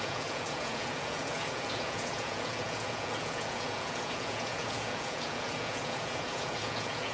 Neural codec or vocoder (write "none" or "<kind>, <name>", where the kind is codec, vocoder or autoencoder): vocoder, Vocos